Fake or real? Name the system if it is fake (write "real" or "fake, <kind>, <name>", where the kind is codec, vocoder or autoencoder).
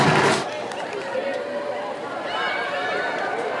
real